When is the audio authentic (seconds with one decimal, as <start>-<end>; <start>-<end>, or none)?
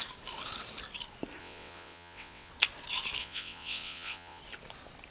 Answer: 0.0-1.4; 2.5-3.2; 4.4-5.1